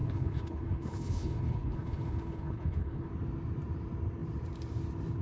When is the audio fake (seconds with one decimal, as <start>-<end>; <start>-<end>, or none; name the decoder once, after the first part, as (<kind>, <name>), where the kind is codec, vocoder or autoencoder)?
0.0-3.1 (codec, HILCodec)